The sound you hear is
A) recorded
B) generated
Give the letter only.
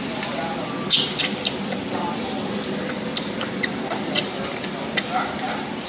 A